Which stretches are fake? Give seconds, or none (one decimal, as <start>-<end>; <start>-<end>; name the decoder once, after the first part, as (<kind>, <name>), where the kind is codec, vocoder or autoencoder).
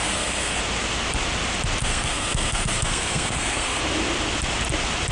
0.0-0.6 (codec, SNAC); 1.8-3.8